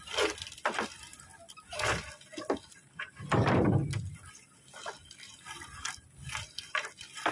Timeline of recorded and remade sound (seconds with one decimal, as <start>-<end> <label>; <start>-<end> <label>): 0.0-7.3 recorded